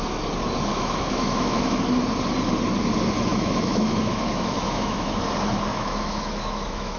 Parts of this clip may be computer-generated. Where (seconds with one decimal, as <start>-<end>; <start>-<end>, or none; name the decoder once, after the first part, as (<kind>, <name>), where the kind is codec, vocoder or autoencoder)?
0.7-1.8 (autoencoder, DAC-VAE); 3.3-5.2; 5.7-7.0